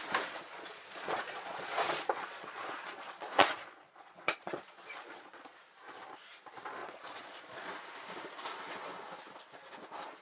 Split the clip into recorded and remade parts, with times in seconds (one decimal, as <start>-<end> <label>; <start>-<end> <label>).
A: 0.0-0.5 recorded; 0.5-5.4 remade; 5.4-6.8 recorded; 6.8-7.7 remade; 7.7-10.2 recorded